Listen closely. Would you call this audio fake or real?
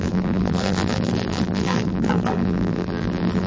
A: fake